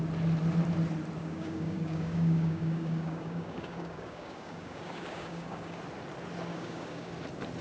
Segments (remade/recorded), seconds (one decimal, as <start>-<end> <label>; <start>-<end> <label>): 0.0-1.2 recorded; 1.2-5.8 remade; 5.8-6.5 recorded; 6.5-7.1 remade; 7.1-7.6 recorded